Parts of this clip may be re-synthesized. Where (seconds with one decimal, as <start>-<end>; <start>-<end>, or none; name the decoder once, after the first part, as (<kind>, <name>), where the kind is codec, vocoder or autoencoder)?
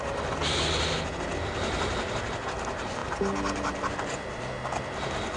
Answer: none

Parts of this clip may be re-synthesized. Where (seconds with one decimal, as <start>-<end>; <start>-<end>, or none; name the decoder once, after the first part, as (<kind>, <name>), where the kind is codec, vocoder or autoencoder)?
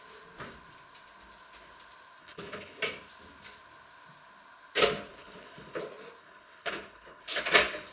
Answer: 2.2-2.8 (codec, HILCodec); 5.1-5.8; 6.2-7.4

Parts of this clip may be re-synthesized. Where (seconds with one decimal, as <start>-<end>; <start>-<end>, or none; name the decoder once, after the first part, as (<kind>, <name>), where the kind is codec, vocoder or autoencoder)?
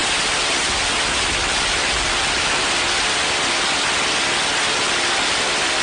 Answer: none